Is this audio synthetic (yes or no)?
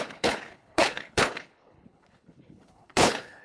yes